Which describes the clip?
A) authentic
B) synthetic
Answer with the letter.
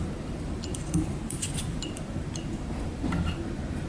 B